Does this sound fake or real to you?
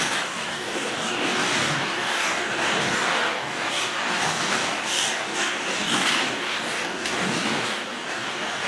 fake